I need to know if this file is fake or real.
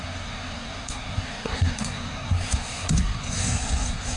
fake